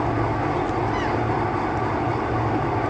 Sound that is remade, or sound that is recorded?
recorded